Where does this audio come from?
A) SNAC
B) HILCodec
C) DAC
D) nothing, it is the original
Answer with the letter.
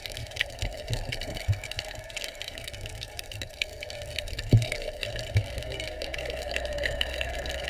A